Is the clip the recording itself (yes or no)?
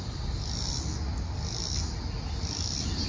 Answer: yes